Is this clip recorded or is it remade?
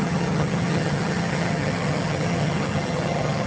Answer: remade